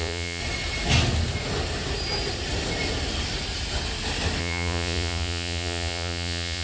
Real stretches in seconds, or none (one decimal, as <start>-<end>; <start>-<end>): 0.4-4.4